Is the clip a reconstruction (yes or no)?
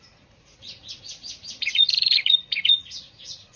yes